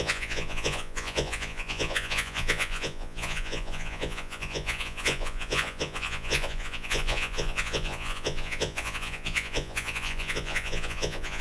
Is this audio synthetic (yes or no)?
yes